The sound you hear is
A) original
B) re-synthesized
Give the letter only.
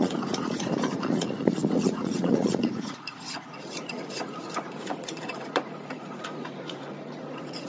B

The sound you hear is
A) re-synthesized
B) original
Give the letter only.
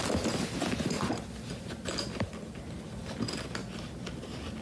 B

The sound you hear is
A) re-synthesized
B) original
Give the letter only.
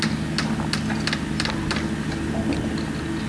B